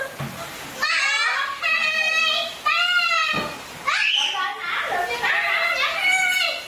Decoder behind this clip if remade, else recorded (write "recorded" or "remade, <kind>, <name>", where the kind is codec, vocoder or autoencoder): recorded